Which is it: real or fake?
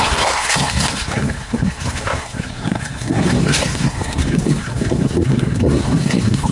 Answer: fake